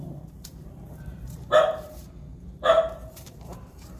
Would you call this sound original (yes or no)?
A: no